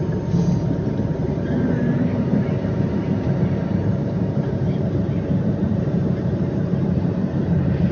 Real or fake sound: fake